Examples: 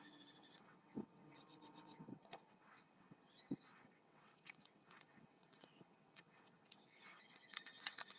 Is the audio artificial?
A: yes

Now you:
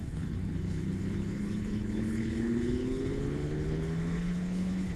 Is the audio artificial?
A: yes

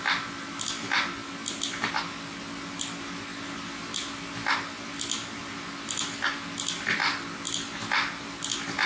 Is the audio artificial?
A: no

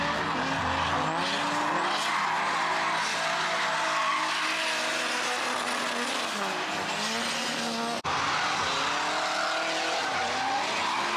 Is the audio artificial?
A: no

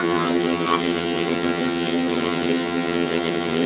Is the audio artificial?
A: yes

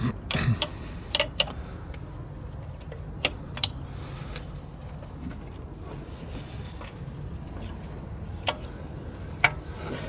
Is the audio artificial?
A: no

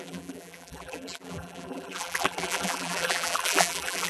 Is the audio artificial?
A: yes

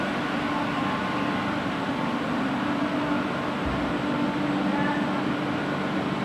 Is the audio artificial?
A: no